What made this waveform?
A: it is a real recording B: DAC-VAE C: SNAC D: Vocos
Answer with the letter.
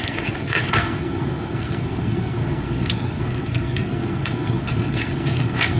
C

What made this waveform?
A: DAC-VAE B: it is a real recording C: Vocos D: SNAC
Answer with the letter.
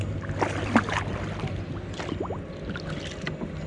B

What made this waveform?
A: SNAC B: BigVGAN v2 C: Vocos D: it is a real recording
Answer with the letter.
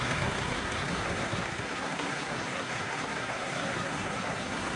A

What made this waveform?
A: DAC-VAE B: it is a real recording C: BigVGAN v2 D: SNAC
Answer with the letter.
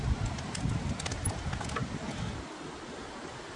B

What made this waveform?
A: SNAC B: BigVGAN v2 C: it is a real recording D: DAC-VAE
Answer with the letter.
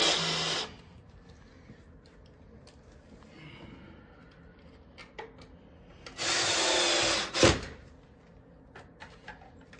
C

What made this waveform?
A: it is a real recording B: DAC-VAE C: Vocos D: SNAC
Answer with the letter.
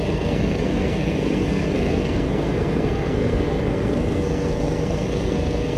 D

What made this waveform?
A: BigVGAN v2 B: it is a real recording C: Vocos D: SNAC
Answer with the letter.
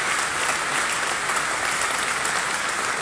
B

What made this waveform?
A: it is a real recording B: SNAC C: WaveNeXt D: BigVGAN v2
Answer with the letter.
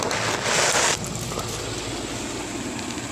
A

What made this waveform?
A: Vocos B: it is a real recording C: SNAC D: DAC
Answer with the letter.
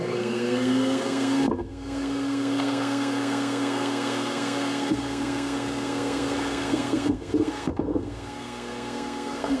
C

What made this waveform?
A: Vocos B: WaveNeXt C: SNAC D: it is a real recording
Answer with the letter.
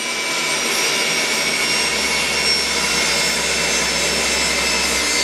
D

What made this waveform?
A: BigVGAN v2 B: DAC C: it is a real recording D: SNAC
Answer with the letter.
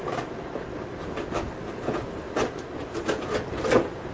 C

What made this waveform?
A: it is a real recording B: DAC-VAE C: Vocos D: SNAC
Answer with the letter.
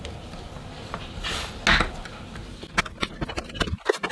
A